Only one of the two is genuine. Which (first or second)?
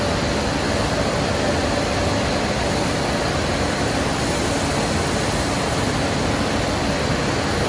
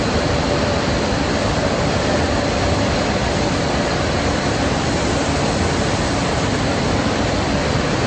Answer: first